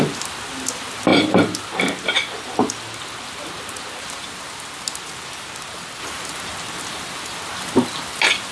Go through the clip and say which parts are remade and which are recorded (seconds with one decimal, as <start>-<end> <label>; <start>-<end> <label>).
0.0-8.5 recorded